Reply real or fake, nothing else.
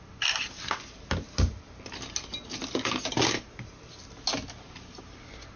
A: real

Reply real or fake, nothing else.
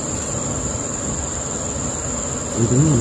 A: real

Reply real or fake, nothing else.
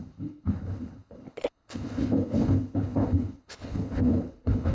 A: fake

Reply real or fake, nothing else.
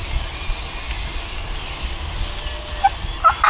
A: real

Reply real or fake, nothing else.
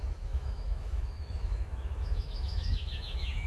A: fake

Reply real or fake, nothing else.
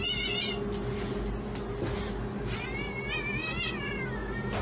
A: real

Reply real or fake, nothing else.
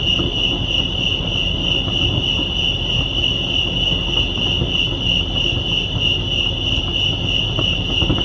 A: real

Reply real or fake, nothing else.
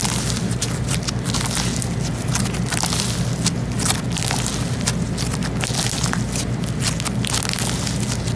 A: real